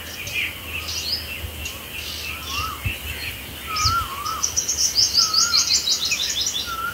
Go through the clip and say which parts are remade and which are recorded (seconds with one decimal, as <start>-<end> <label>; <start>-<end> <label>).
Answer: 0.0-6.9 recorded